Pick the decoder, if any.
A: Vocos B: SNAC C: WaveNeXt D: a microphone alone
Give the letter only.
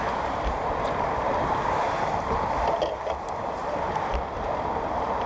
D